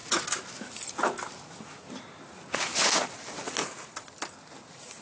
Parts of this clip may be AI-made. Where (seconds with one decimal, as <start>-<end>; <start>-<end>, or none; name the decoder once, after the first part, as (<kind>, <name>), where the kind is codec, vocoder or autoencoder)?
none